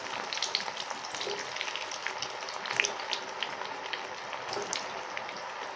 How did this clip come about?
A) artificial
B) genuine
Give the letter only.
B